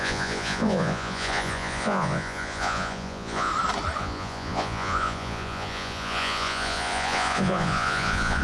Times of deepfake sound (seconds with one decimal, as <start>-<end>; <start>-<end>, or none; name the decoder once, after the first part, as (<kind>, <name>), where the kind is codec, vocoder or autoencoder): 0.0-3.5 (vocoder, Vocos); 4.0-8.4